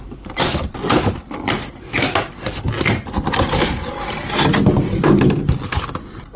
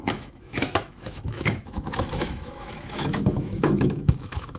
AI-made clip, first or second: second